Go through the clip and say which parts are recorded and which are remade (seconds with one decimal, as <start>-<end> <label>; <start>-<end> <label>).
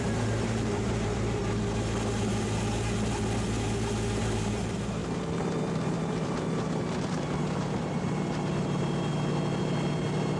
0.0-1.4 remade; 1.4-4.2 recorded; 4.2-9.1 remade; 9.1-9.6 recorded; 9.6-10.4 remade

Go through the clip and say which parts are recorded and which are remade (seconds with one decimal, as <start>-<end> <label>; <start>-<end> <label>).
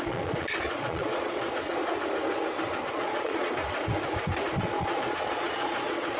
0.0-1.8 remade; 1.8-2.9 recorded; 2.9-3.6 remade; 3.6-4.6 recorded; 4.6-6.2 remade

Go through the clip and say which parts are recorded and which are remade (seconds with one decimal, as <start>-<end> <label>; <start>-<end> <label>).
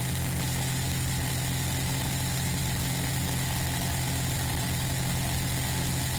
0.0-6.2 recorded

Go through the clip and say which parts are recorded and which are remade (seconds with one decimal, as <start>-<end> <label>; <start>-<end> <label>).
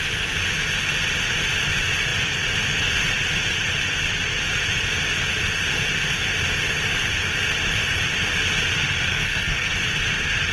0.0-9.1 recorded; 9.1-9.7 remade; 9.7-10.5 recorded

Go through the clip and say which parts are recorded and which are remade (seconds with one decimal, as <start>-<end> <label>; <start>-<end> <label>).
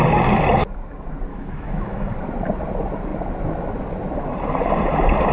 0.0-1.3 recorded; 1.3-2.1 remade; 2.1-5.3 recorded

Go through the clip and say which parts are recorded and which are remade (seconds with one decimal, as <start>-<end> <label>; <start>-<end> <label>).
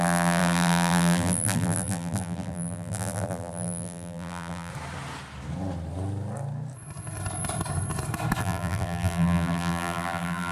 0.0-4.7 remade; 4.7-8.4 recorded; 8.4-10.5 remade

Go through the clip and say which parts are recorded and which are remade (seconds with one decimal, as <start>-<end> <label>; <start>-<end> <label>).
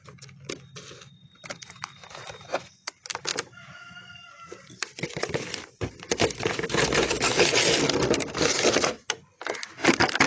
0.0-1.4 recorded; 1.4-2.5 remade; 2.5-3.3 recorded; 3.3-7.1 remade; 7.1-10.3 recorded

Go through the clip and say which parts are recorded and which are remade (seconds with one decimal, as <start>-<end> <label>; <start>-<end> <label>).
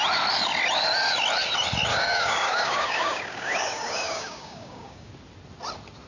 0.0-1.9 recorded; 1.9-5.1 remade; 5.1-6.1 recorded